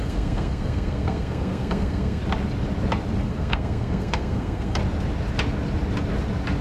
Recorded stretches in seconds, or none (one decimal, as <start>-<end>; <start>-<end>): 2.2-3.2; 4.8-6.6